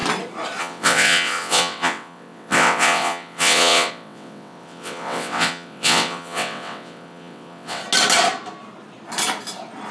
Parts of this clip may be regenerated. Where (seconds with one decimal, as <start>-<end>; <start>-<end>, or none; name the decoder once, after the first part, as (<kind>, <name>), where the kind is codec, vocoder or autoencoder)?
0.6-7.8 (vocoder, WaveNeXt)